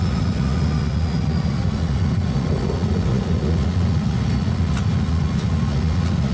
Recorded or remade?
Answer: remade